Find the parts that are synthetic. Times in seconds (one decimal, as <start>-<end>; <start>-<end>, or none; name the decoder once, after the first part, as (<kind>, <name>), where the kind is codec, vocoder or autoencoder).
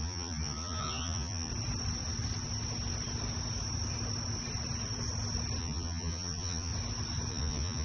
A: 0.0-1.5 (vocoder, Vocos); 5.6-6.7; 7.3-7.8